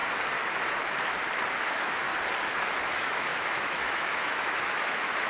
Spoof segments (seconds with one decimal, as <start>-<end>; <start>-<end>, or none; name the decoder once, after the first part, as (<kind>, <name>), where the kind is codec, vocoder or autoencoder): 1.6-2.1 (autoencoder, DAC-VAE); 2.9-5.3